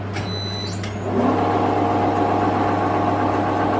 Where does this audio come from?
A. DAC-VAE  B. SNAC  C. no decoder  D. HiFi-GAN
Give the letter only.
C